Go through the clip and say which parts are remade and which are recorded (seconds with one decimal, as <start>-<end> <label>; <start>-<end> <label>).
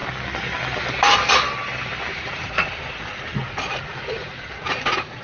0.0-2.1 recorded; 2.1-5.2 remade